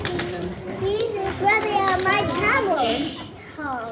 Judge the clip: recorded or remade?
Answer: remade